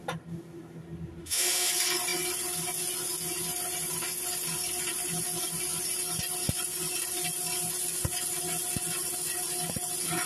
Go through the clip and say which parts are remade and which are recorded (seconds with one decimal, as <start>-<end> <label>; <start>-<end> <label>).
0.0-1.2 recorded; 1.2-1.7 remade; 1.7-10.3 recorded